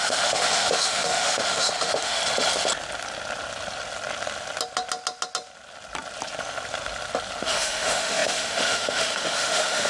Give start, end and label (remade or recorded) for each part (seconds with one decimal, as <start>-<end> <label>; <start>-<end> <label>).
0.0-2.2 remade; 2.2-7.4 recorded; 7.4-9.9 remade